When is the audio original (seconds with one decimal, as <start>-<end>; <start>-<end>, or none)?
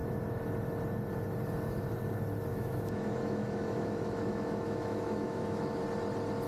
0.0-2.5; 5.8-6.5